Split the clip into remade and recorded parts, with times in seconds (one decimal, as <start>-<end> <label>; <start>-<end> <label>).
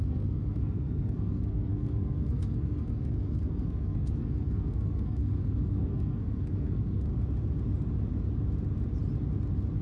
0.0-7.1 remade; 7.1-9.8 recorded